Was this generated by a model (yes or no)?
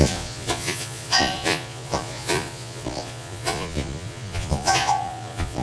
yes